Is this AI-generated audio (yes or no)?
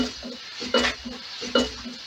no